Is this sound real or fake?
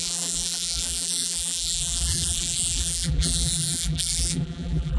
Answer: fake